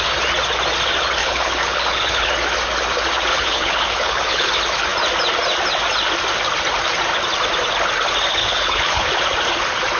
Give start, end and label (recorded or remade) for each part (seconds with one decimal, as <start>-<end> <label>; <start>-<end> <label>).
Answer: 0.0-1.2 recorded; 1.2-2.3 remade; 2.3-3.3 recorded; 3.3-4.5 remade; 4.5-8.4 recorded; 8.4-9.1 remade; 9.1-10.0 recorded